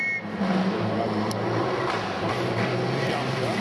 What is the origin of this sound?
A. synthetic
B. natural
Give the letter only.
B